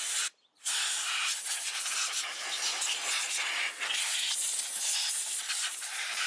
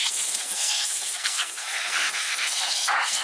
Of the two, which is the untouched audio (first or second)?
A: first